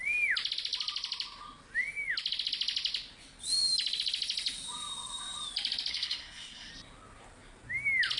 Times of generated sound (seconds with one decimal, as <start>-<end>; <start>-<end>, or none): 5.9-6.7